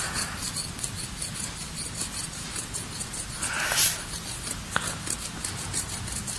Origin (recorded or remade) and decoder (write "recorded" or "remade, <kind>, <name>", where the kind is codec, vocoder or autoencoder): recorded